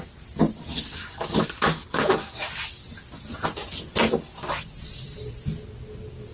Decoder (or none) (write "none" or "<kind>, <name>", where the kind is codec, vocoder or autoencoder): none